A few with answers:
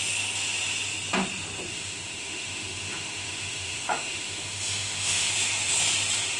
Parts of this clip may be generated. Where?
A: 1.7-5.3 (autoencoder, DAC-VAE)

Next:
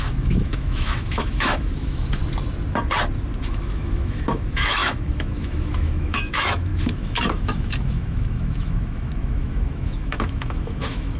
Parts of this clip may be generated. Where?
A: 0.0-2.2 (autoencoder, DAC-VAE); 3.4-11.2

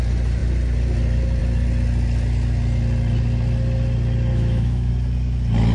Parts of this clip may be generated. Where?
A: 4.3-4.9 (autoencoder, DAC-VAE)

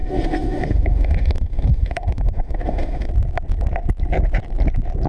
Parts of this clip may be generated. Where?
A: 0.0-3.1 (autoencoder, DAC-VAE)